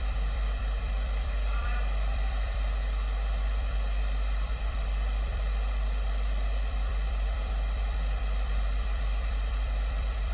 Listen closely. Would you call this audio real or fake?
fake